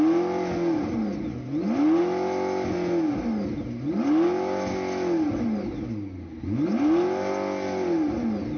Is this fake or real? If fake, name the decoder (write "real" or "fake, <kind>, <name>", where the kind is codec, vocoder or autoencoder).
real